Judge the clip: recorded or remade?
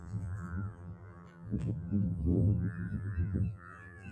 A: remade